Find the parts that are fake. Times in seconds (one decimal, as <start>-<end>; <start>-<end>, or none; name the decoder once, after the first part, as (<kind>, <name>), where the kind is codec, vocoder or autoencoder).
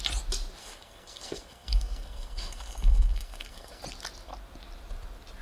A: 0.6-3.8 (codec, SNAC)